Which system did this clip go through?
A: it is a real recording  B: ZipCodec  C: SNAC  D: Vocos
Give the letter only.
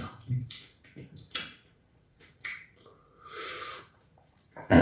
D